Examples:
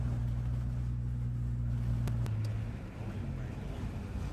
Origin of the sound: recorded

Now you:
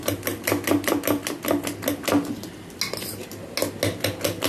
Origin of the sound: recorded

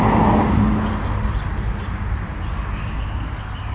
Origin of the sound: recorded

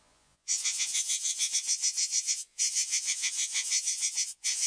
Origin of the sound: remade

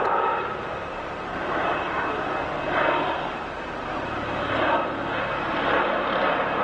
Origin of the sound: recorded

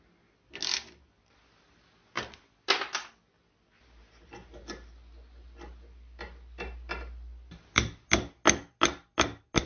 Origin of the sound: recorded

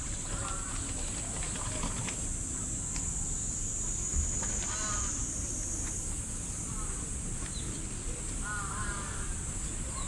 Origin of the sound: recorded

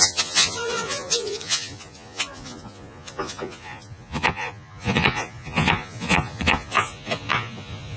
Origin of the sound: remade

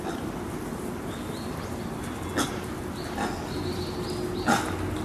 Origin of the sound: recorded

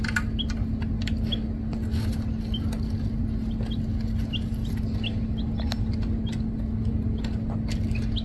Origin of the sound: recorded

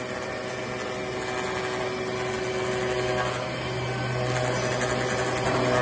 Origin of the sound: recorded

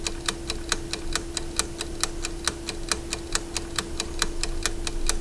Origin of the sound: recorded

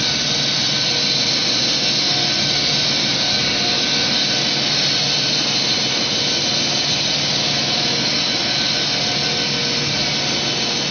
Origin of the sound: recorded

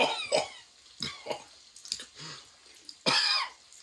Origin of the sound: recorded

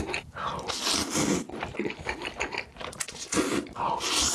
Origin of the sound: recorded